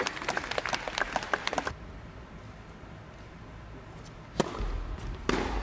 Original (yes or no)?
yes